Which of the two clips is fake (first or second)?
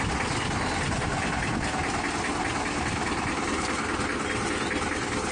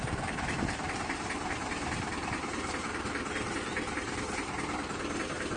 second